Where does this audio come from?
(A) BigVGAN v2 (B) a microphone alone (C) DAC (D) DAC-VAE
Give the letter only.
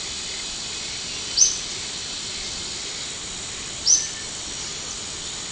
B